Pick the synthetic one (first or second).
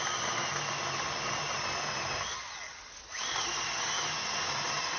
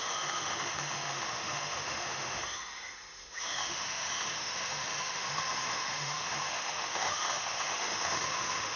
second